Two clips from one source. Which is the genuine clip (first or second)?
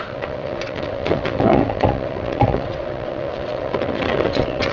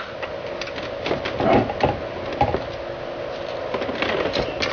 second